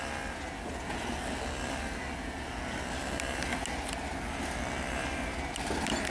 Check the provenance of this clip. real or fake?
real